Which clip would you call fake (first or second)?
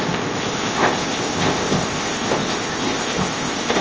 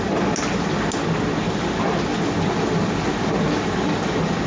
first